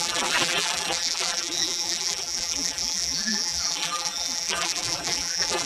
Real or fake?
fake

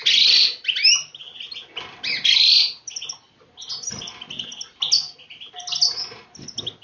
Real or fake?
real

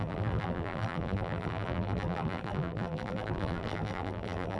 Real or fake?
fake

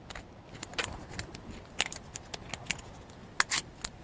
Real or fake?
real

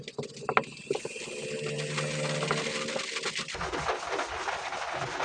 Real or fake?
real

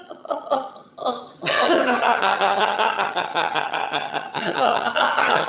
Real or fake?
fake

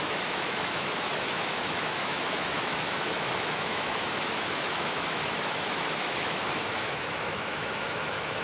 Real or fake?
fake